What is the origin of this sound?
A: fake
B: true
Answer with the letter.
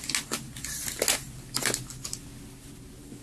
B